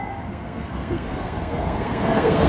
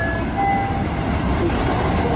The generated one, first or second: first